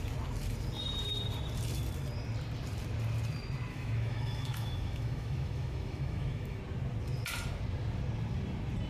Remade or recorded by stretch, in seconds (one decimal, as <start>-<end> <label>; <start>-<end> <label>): 0.0-3.7 recorded; 3.7-6.6 remade; 6.6-8.9 recorded